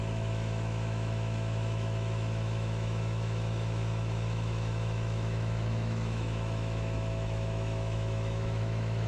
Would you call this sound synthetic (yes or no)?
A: yes